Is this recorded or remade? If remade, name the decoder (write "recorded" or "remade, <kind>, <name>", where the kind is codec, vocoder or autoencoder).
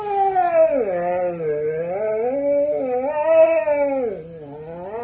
recorded